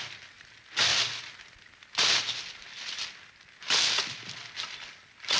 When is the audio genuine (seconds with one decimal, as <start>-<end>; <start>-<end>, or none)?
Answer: 0.0-5.4

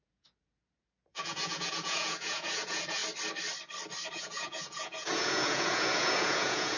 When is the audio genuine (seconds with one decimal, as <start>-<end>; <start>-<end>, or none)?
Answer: 3.0-4.1

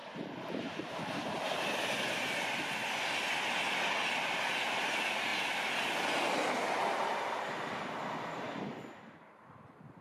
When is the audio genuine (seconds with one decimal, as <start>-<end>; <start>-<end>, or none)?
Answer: 0.0-10.0

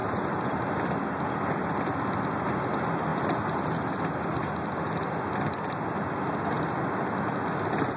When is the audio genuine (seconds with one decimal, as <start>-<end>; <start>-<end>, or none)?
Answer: 0.0-8.0

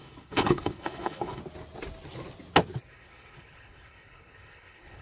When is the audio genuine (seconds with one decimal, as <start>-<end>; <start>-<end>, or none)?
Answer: 1.4-2.9

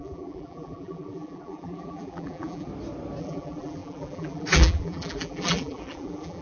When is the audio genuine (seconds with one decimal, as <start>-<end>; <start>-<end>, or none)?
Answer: 2.7-3.2